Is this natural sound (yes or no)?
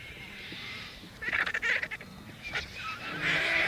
no